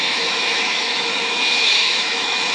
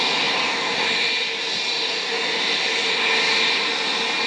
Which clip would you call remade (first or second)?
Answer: first